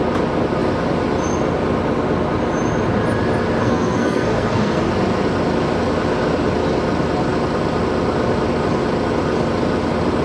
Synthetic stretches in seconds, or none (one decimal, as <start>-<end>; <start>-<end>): 3.6-4.9